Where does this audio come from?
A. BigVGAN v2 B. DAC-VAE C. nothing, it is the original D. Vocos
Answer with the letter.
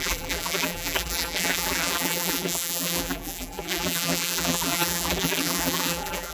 A